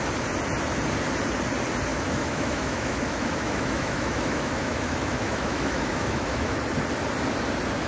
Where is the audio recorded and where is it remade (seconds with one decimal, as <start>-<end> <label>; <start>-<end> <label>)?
0.0-1.9 recorded; 1.9-6.6 remade; 6.6-7.9 recorded